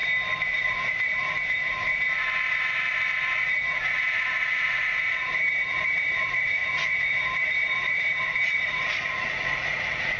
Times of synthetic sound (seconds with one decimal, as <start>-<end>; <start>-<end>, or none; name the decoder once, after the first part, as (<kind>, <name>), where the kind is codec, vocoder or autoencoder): 0.6-1.9 (vocoder, Vocos); 3.4-10.2